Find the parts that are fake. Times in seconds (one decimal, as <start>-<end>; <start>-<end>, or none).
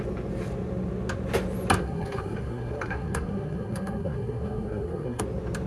1.8-5.2